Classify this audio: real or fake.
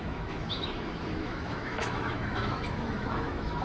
fake